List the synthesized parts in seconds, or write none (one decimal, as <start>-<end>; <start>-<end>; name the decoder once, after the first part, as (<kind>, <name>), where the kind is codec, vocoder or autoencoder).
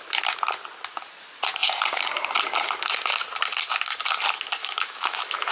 4.6-5.5 (autoencoder, DAC-VAE)